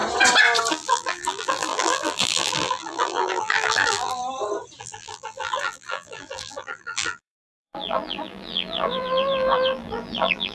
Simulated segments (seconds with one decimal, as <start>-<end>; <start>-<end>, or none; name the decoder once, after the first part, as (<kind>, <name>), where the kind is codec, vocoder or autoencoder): 0.7-4.2 (vocoder, BigVGAN v2); 4.8-10.5